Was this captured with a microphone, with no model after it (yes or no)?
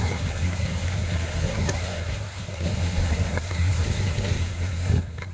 no